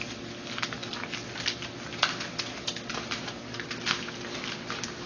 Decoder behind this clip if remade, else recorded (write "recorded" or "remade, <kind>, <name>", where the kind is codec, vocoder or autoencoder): recorded